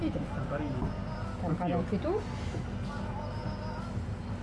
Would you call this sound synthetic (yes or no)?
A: no